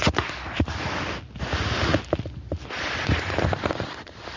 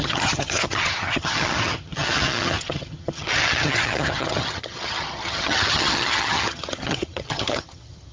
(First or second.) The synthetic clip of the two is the second